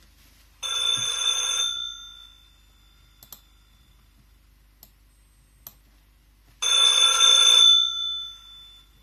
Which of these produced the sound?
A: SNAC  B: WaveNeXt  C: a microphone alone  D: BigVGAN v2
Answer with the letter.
C